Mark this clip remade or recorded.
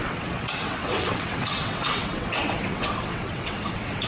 remade